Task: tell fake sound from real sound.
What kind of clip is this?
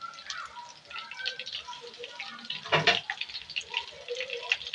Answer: real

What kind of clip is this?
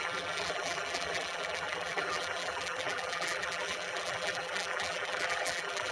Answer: fake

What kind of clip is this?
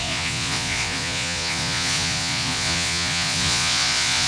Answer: fake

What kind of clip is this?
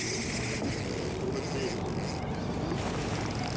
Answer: real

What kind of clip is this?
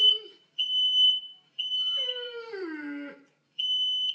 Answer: fake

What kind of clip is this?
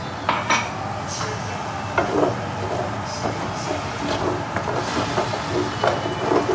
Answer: real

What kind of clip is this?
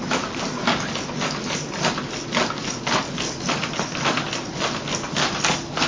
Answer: real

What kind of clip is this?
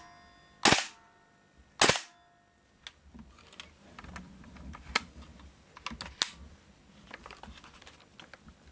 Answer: real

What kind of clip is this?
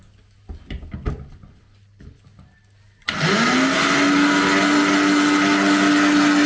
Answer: real